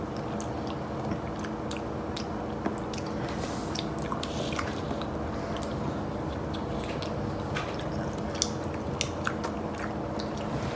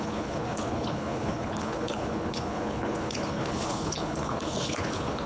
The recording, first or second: first